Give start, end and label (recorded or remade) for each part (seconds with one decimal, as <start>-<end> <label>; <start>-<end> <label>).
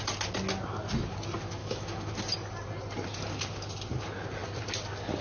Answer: 0.0-1.6 recorded; 1.6-2.1 remade; 2.1-5.2 recorded